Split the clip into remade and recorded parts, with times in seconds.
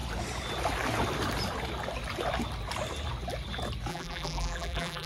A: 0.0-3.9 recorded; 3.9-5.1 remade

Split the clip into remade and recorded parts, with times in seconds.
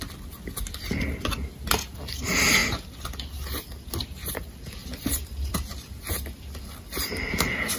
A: 0.0-4.8 recorded; 4.8-5.9 remade; 5.9-7.8 recorded